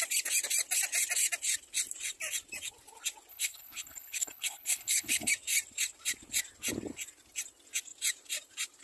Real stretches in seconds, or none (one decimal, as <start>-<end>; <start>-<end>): 0.0-3.3; 5.3-8.8